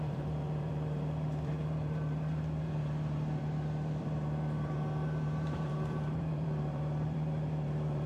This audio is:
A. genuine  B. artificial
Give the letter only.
B